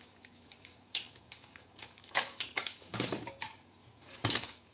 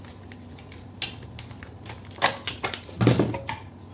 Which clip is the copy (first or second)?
first